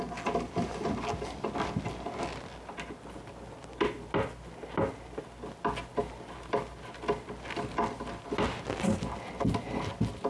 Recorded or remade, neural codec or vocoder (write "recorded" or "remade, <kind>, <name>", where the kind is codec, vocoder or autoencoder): recorded